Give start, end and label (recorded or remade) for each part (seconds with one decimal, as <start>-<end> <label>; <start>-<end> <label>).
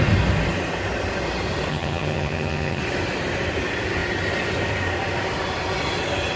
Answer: 0.0-1.7 recorded; 1.7-2.8 remade; 2.8-6.4 recorded